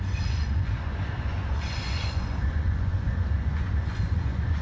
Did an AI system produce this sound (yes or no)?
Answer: yes